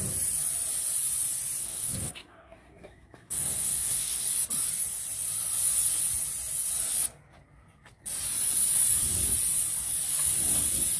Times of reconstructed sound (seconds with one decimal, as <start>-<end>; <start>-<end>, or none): 1.6-4.3